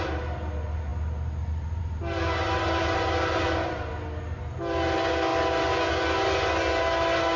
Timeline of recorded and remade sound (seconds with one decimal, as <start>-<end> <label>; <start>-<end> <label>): 0.0-7.4 recorded